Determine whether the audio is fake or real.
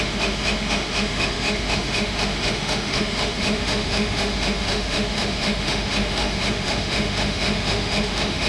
fake